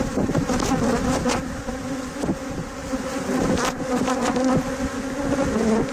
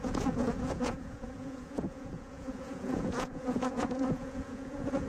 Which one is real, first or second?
first